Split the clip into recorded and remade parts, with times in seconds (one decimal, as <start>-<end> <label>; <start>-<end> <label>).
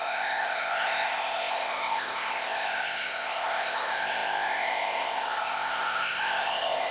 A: 0.0-6.9 remade